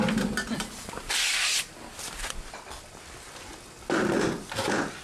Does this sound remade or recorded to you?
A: remade